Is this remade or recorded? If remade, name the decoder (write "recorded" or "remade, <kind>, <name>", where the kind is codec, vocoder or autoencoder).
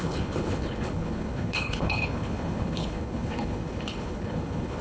remade, codec, HILCodec